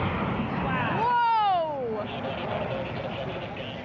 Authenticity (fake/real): real